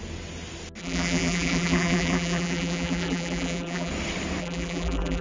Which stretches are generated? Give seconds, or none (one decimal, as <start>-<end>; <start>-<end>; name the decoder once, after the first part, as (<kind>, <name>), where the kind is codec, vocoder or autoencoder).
0.8-3.9 (vocoder, BigVGAN v2); 4.4-5.2